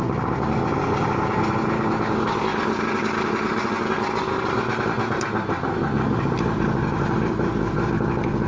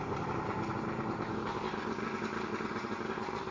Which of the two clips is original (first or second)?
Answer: first